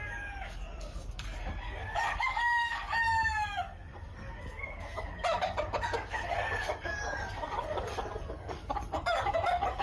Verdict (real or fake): fake